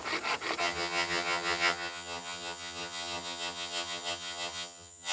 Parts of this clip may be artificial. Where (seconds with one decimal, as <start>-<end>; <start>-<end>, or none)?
0.6-5.1